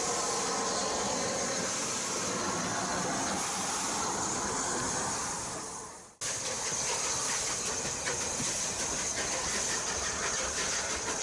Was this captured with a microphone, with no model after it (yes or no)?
yes